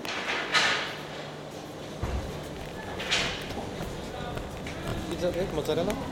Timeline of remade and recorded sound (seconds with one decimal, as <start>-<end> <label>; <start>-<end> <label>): 0.0-0.5 recorded; 0.5-3.5 remade; 3.5-4.9 recorded; 4.9-5.5 remade; 5.5-6.1 recorded